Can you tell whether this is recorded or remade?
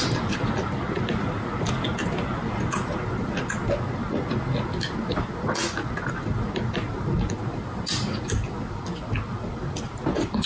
recorded